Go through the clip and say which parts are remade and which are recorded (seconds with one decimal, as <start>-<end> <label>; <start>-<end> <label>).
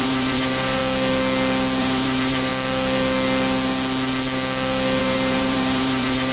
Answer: 0.0-0.8 remade; 0.8-1.8 recorded; 1.8-2.5 remade; 2.5-5.0 recorded; 5.0-6.3 remade